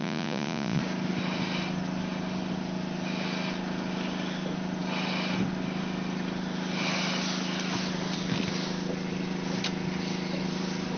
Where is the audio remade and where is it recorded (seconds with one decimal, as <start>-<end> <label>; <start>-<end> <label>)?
0.0-0.8 remade; 0.8-11.0 recorded